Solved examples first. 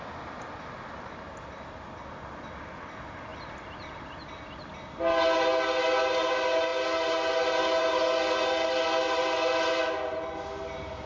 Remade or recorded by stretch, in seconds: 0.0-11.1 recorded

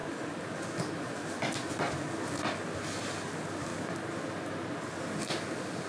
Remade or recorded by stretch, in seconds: 0.0-5.9 recorded

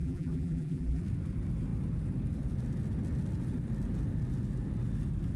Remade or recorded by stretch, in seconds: 0.0-1.0 remade; 1.0-5.4 recorded

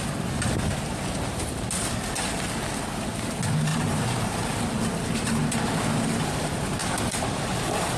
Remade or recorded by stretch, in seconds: 0.0-3.7 recorded; 3.7-5.8 remade; 5.8-6.8 recorded; 6.8-8.0 remade

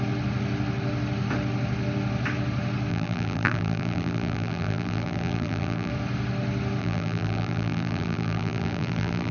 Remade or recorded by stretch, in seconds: 0.0-2.9 recorded; 2.9-5.9 remade; 5.9-6.8 recorded; 6.8-9.3 remade

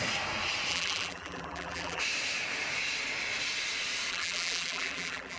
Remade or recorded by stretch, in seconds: 0.0-0.7 recorded; 0.7-2.0 remade; 2.0-4.1 recorded; 4.1-5.4 remade

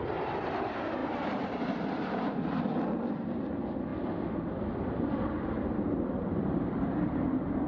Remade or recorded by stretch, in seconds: 0.0-1.0 recorded; 1.0-2.6 remade; 2.6-6.2 recorded; 6.2-7.2 remade; 7.2-7.7 recorded